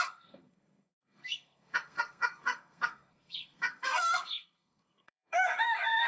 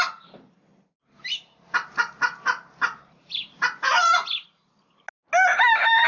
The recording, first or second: second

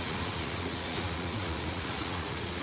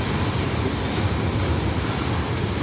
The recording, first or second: second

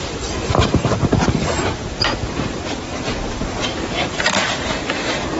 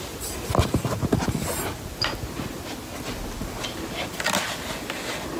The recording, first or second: second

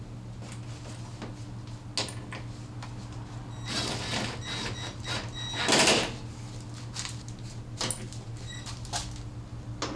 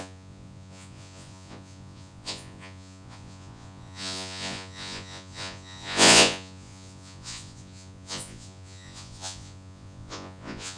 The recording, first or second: first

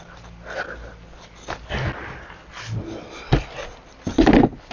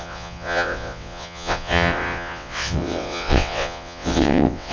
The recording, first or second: first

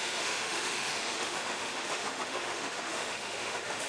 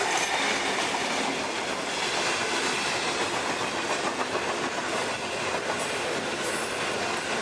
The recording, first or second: second